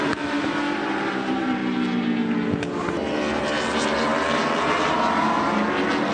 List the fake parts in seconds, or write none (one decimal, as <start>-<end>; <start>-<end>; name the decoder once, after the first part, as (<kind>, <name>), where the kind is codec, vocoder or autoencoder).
0.0-1.6 (vocoder, BigVGAN v2); 3.4-6.1